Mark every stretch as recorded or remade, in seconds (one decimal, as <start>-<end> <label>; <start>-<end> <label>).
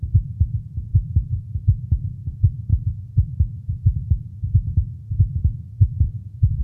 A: 0.0-2.7 remade; 2.7-6.6 recorded